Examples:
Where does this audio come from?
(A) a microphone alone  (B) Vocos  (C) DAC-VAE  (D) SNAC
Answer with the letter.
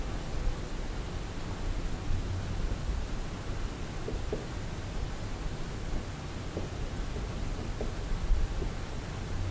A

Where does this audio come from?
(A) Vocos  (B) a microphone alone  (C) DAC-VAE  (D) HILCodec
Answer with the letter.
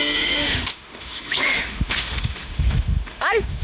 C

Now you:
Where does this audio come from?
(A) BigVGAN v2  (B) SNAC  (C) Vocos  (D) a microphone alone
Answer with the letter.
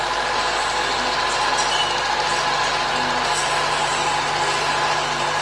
D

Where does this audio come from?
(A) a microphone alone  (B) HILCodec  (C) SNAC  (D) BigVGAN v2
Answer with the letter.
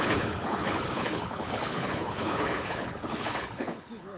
B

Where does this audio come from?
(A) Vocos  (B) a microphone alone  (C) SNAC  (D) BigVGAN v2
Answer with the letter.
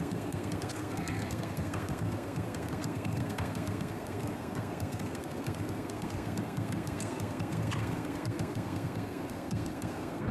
C